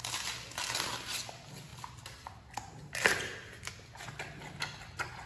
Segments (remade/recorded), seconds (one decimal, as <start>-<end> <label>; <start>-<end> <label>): 0.0-5.3 recorded